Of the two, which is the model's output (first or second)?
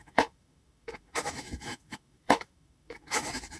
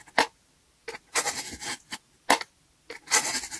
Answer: first